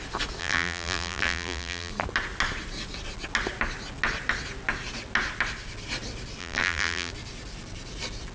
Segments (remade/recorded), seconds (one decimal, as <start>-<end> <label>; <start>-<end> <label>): 0.0-0.4 recorded; 0.4-1.9 remade; 1.9-6.4 recorded; 6.4-7.1 remade; 7.1-8.3 recorded